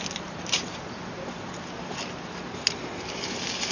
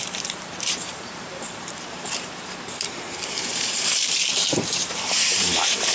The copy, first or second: second